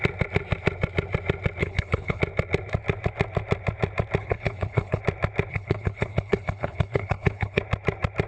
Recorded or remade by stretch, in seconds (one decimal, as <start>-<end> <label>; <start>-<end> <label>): 0.0-1.6 recorded; 1.6-2.2 remade; 2.2-4.2 recorded; 4.2-5.0 remade; 5.0-5.5 recorded; 5.5-7.6 remade; 7.6-8.3 recorded